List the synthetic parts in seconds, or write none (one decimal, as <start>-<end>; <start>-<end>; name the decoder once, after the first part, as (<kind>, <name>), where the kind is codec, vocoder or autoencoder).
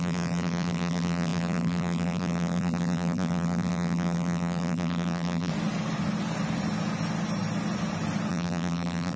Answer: 0.0-5.5 (vocoder, BigVGAN v2); 8.3-9.2